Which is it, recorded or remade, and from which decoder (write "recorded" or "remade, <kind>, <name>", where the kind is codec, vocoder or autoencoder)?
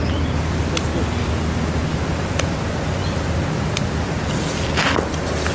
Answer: recorded